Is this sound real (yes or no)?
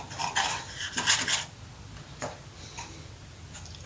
yes